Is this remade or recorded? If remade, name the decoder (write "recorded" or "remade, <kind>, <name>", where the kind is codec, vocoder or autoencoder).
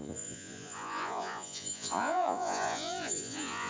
remade, vocoder, Vocos